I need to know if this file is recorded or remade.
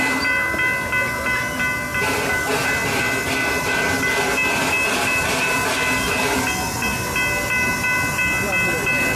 recorded